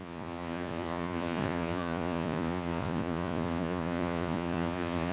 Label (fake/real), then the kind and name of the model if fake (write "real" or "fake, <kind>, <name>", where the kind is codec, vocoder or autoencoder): fake, vocoder, Vocos